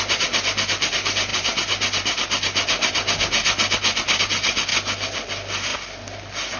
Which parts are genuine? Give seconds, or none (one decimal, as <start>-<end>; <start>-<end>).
4.7-5.3